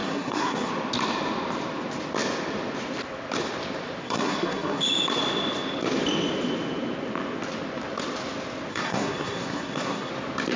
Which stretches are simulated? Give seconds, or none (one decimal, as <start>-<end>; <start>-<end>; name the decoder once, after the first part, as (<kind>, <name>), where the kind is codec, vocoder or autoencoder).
0.0-0.7 (codec, SNAC); 4.0-4.8; 8.7-10.1